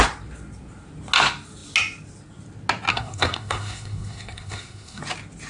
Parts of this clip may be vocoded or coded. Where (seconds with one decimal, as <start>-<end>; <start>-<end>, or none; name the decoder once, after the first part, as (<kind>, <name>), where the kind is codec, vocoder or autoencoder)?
2.9-5.0 (codec, SNAC)